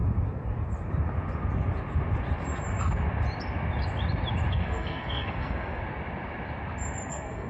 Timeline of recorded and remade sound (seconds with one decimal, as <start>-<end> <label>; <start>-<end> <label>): 0.0-4.5 recorded; 4.5-5.8 remade; 5.8-7.1 recorded; 7.1-7.5 remade